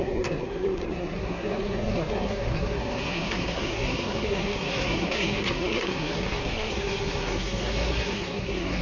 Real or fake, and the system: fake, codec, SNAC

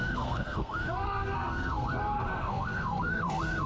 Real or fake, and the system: fake, codec, SNAC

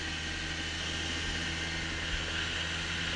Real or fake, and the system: real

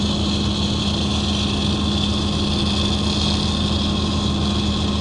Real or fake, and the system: real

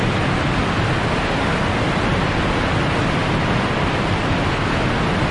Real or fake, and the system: real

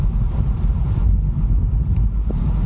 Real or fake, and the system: real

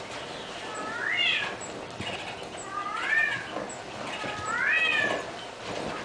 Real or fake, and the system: real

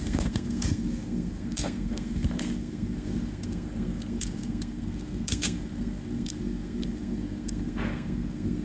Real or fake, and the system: fake, codec, SNAC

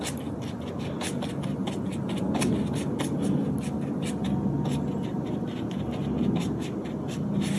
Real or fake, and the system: real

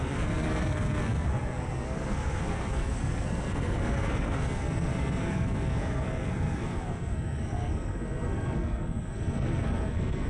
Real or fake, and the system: fake, codec, SNAC